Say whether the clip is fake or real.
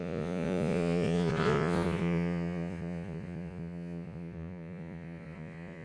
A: fake